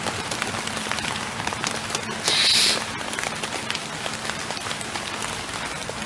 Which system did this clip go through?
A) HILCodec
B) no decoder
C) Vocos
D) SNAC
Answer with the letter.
B